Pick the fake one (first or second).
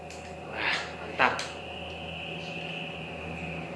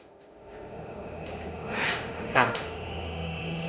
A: second